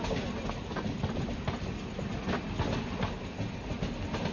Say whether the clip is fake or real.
real